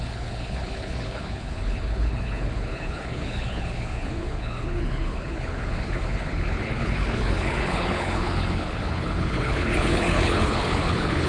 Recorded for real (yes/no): no